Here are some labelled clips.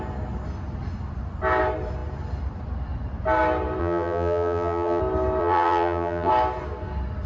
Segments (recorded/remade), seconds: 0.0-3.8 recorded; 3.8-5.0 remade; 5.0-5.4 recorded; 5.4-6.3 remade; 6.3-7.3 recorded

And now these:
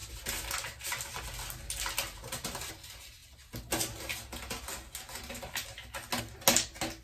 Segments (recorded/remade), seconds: 0.0-7.0 recorded

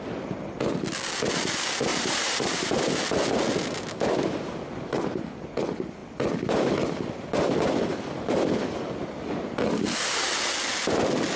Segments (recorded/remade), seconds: 0.0-1.9 recorded; 1.9-2.9 remade; 2.9-11.4 recorded

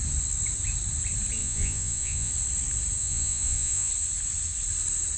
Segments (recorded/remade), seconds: 0.0-1.4 recorded; 1.4-2.3 remade; 2.3-3.0 recorded; 3.0-3.9 remade; 3.9-5.2 recorded